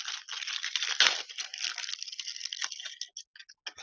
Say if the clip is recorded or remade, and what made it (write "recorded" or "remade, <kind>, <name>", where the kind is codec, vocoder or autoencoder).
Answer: recorded